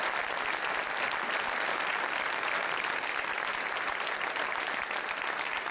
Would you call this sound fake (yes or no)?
no